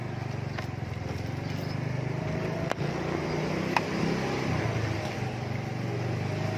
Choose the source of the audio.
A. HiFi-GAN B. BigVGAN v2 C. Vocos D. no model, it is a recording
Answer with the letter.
D